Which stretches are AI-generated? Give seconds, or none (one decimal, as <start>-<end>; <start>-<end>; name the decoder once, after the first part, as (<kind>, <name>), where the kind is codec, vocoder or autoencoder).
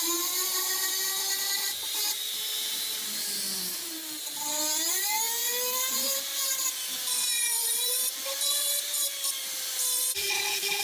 0.0-10.8 (vocoder, BigVGAN v2)